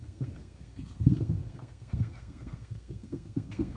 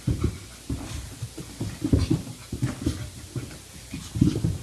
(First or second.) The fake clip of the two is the first